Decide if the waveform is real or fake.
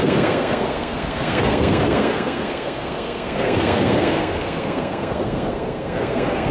fake